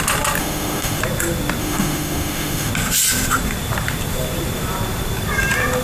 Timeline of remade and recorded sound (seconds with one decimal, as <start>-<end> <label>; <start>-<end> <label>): 0.0-0.4 recorded; 0.4-1.0 remade; 1.0-1.6 recorded; 1.6-2.7 remade; 2.7-5.8 recorded